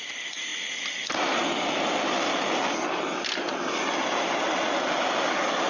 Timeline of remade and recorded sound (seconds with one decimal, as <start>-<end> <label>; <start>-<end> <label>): 0.0-5.7 recorded